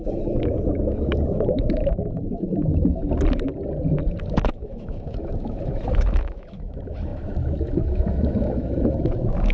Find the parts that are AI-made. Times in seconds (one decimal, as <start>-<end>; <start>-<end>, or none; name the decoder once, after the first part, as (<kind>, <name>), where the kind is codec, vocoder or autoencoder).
0.0-3.0 (autoencoder, DAC-VAE); 4.2-9.5